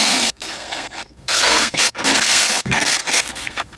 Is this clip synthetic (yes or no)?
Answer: yes